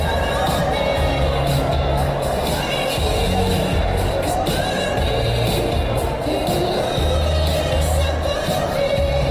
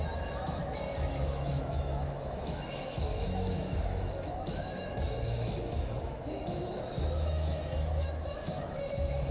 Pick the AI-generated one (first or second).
second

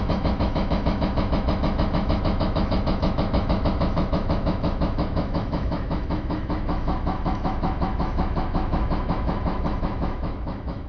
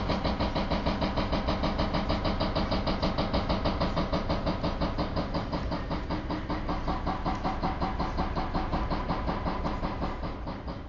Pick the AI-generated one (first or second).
first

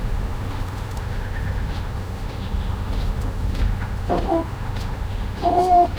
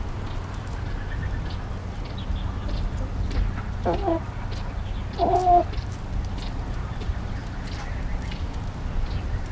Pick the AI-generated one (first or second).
first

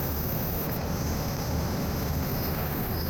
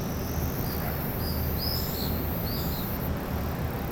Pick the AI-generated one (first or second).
first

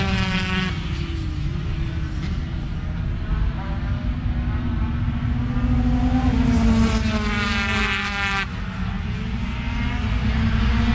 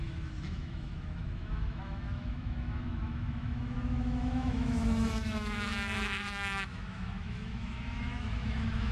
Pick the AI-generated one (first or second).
second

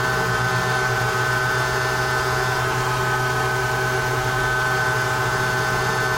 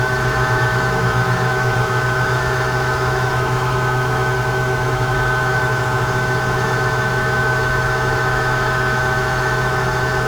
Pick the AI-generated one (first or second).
second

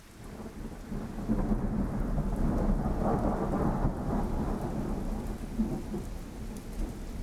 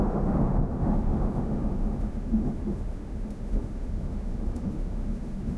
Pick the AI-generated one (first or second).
second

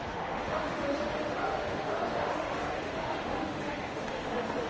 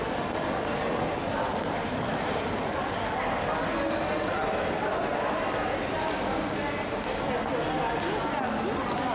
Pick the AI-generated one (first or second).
first